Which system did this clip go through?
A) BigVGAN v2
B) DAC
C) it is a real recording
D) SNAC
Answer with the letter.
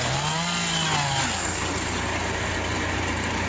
C